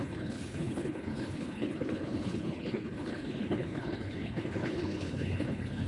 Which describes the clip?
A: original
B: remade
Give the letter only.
B